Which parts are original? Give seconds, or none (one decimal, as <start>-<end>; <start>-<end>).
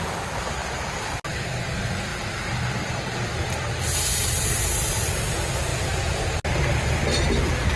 0.0-5.7; 6.2-7.8